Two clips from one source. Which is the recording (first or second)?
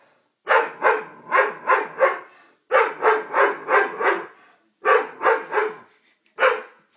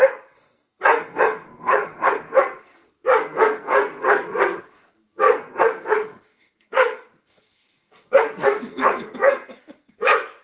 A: first